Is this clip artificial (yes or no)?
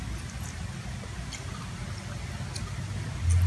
no